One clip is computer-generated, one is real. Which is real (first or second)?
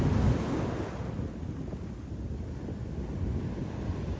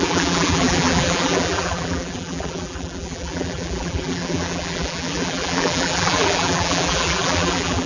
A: first